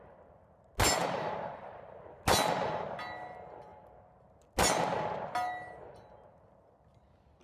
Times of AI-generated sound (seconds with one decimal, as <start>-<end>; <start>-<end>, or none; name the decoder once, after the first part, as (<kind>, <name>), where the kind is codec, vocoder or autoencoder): 1.0-2.2 (vocoder, BigVGAN v2)